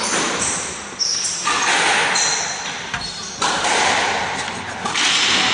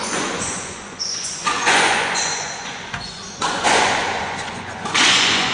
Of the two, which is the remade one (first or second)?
second